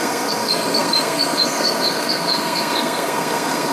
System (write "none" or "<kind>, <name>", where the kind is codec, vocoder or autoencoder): codec, SNAC